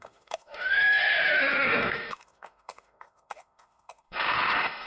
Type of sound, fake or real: fake